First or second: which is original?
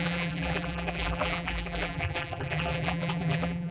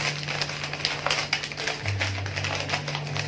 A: second